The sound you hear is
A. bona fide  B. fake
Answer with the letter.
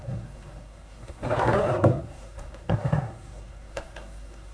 B